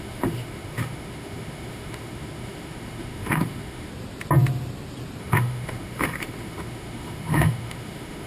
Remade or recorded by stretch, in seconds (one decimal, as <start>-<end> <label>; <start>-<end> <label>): 0.0-3.9 remade; 3.9-5.2 recorded; 5.2-8.3 remade